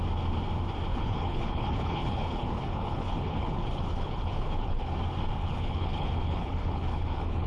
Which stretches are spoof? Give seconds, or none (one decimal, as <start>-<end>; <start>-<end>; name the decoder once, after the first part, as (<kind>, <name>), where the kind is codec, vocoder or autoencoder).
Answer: 0.9-4.9 (codec, HILCodec); 5.4-7.5